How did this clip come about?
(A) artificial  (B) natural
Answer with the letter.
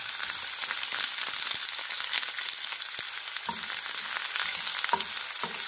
B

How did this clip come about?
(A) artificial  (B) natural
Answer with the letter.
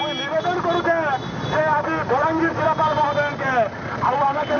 B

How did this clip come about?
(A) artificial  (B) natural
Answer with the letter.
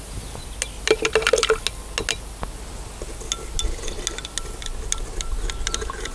B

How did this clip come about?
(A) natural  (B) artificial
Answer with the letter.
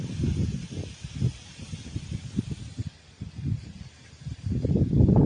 A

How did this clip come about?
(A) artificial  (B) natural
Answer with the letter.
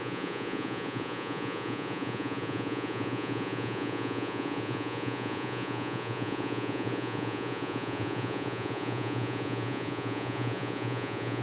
A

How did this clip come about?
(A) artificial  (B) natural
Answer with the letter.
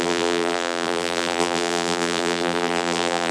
A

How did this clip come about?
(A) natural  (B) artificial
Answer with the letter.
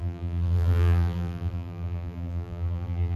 B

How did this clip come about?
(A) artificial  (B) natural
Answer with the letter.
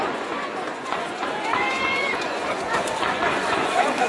A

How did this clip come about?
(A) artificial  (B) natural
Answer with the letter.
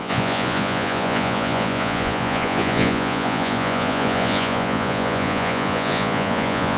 A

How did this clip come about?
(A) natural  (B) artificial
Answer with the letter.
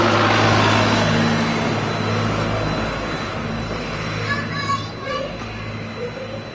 A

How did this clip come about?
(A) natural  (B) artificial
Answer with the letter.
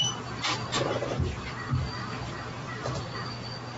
A